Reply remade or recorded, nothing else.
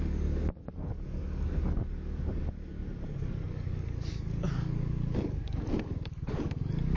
remade